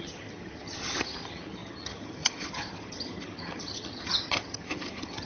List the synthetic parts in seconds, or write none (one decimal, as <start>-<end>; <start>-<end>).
0.0-5.2